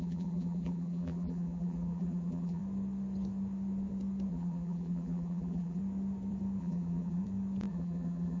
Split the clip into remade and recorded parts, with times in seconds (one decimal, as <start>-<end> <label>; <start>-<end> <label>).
0.0-2.6 remade; 2.6-4.3 recorded; 4.3-5.8 remade; 5.8-6.6 recorded; 6.6-7.2 remade; 7.2-7.7 recorded; 7.7-8.4 remade